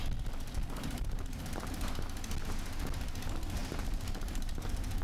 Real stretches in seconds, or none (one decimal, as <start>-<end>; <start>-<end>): 0.0-0.6; 1.4-3.6; 4.5-5.0